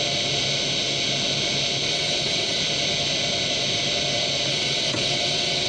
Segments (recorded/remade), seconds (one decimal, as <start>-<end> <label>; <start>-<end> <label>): 0.0-1.9 recorded; 1.9-2.6 remade; 2.6-4.5 recorded; 4.5-5.7 remade